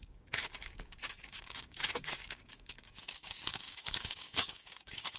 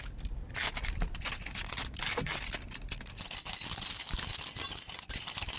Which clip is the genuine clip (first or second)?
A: second